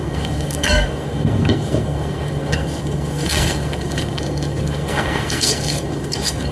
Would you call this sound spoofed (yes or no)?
yes